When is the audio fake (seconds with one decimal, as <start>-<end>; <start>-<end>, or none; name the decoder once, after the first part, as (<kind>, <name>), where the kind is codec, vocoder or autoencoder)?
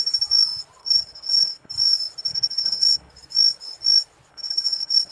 0.8-1.7 (codec, HILCodec); 2.3-3.1; 4.3-5.1